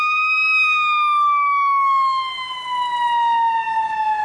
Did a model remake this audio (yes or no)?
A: no